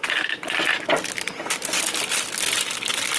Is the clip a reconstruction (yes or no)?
no